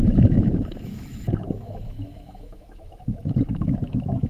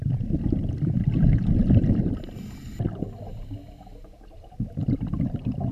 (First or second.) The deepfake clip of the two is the first